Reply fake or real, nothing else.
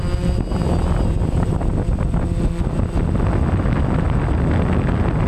real